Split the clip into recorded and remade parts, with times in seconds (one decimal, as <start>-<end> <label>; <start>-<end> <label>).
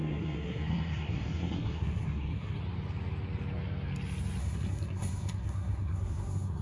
0.0-2.6 remade; 2.6-4.4 recorded; 4.4-6.6 remade